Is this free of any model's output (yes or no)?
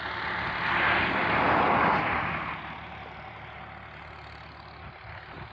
yes